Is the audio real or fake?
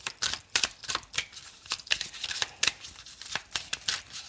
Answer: real